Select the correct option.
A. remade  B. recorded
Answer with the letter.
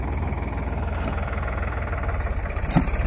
B